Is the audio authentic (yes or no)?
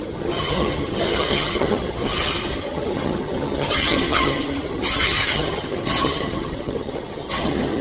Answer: no